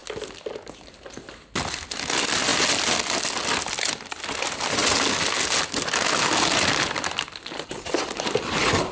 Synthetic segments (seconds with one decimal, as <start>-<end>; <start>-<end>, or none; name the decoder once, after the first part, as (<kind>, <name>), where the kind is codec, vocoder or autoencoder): none